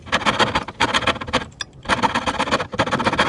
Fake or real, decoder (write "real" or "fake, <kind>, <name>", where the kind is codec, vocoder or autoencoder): real